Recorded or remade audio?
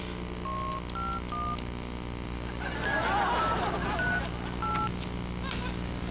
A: recorded